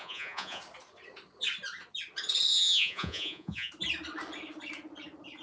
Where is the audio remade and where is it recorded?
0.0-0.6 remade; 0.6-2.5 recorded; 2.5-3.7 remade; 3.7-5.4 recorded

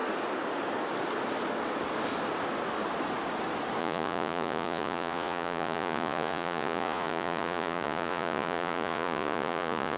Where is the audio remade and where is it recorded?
0.0-3.8 recorded; 3.8-10.0 remade

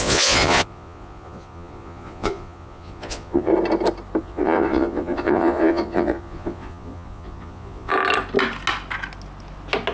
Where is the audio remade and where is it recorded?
0.0-3.5 remade; 3.5-4.2 recorded; 4.2-7.9 remade; 7.9-9.9 recorded

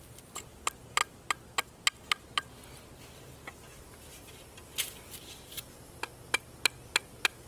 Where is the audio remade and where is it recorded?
0.0-7.5 recorded

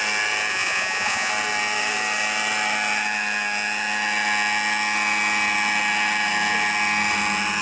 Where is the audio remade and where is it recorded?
0.0-0.5 recorded; 0.5-1.3 remade; 1.3-7.6 recorded

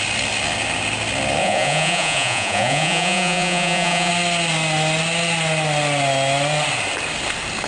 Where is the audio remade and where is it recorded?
0.0-1.4 recorded; 1.4-4.1 remade; 4.1-7.7 recorded